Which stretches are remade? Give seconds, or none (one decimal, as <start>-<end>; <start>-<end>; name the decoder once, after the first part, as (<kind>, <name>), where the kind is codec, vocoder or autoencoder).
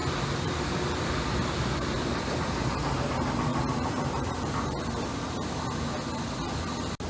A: 0.0-2.2 (vocoder, BigVGAN v2); 3.5-5.2